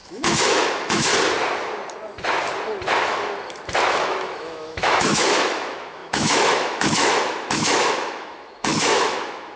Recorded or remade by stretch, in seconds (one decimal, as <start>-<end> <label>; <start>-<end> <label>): 0.0-1.1 remade; 1.1-3.8 recorded; 3.8-9.6 remade